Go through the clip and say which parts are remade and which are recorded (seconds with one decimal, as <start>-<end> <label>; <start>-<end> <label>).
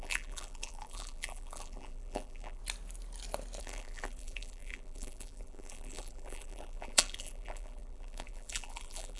0.0-2.6 remade; 2.6-3.6 recorded; 3.6-9.2 remade